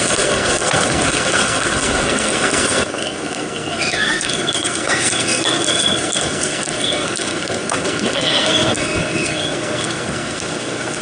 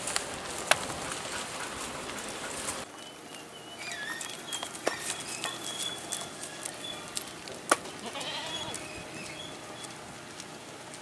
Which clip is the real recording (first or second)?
second